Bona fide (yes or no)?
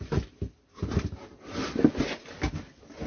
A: yes